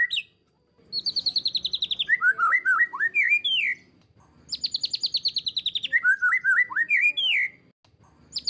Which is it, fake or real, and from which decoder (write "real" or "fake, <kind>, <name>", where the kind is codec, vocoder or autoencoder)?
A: real